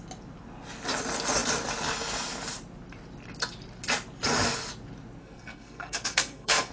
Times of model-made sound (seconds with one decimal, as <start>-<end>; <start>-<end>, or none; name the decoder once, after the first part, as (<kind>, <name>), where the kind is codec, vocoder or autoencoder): 5.2-6.7 (codec, SNAC)